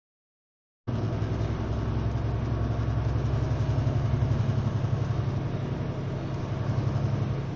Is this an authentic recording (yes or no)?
yes